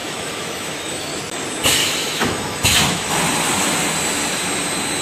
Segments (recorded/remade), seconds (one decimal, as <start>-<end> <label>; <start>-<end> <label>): 0.0-1.2 remade; 1.2-1.8 recorded; 1.8-3.1 remade; 3.1-5.0 recorded